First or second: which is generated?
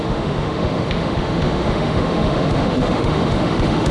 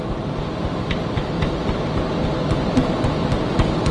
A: first